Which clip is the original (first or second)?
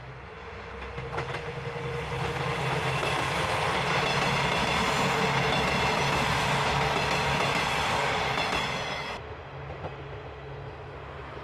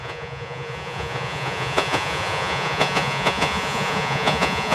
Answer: first